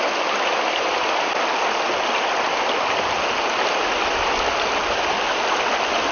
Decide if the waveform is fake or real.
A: real